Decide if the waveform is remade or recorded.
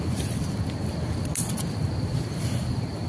recorded